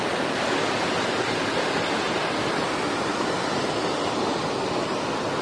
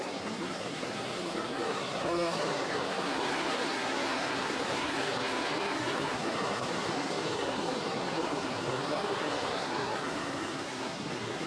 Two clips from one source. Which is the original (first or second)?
first